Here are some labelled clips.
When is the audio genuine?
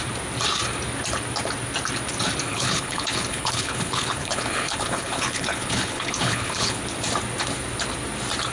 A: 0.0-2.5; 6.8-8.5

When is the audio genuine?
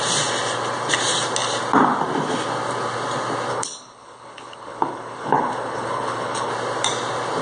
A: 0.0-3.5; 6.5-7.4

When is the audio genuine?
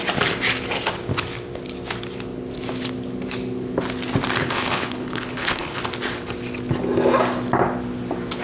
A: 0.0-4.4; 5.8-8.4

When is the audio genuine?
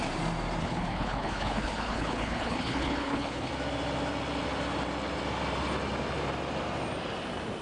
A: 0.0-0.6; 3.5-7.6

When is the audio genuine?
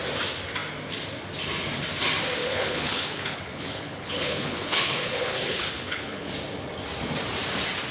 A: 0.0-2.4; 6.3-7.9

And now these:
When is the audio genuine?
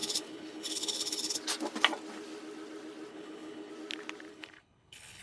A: 1.4-3.1; 3.7-4.3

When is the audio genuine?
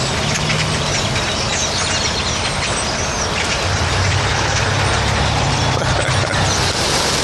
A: 0.0-4.1; 4.6-7.2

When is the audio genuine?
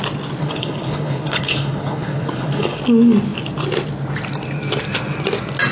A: 0.0-0.4; 2.8-5.7